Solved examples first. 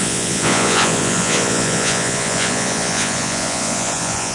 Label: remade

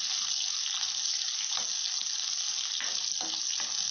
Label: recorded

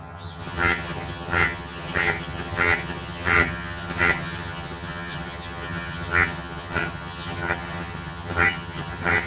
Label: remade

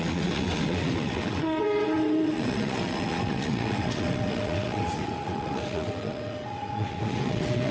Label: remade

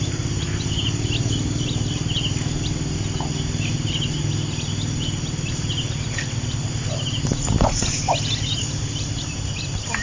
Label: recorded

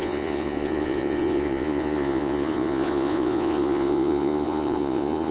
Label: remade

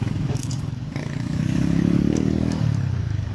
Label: remade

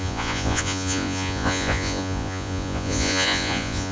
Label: remade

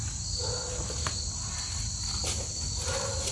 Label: recorded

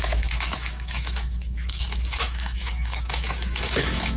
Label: remade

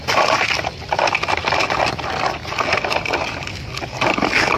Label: recorded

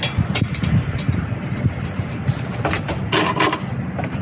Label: recorded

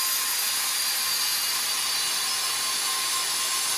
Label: recorded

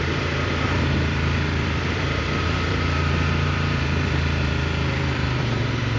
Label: remade